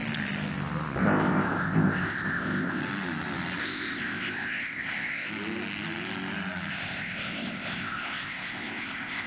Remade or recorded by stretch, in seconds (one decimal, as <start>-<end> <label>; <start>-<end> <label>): 0.0-1.0 recorded; 1.0-2.8 remade; 2.8-3.6 recorded; 3.6-5.3 remade; 5.3-6.7 recorded; 6.7-9.3 remade